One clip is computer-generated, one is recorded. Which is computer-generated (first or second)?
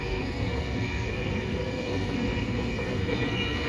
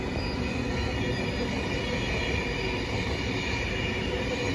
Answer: first